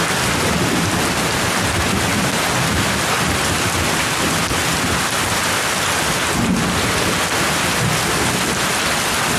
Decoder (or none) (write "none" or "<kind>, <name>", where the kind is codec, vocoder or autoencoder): none